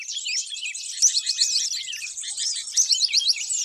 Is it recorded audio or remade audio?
remade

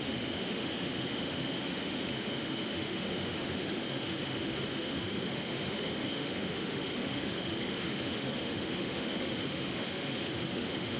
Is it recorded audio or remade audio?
remade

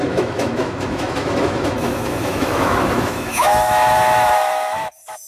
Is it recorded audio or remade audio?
remade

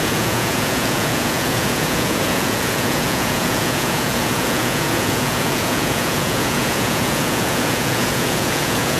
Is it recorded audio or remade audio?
remade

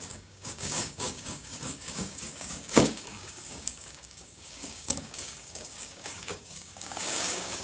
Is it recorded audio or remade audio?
remade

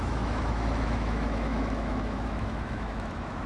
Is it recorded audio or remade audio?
remade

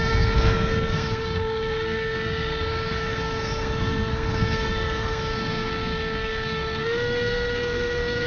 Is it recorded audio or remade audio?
remade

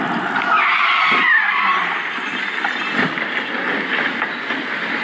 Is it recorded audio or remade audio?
recorded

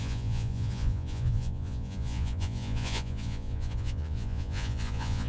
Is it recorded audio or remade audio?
remade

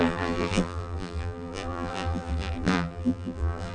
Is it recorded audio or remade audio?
remade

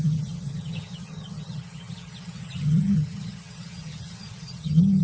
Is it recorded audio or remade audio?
remade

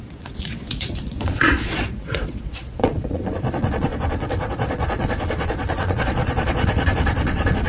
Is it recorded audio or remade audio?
remade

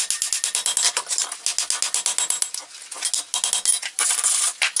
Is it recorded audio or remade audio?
recorded